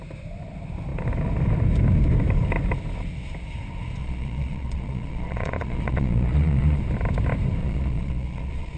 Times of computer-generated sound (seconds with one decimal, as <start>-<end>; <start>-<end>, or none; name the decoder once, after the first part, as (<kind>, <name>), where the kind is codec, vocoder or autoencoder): 4.0-6.8 (vocoder, Vocos); 7.6-8.8